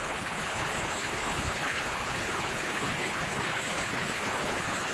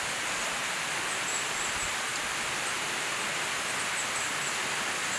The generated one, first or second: first